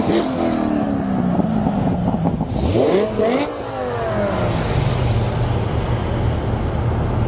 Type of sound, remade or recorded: recorded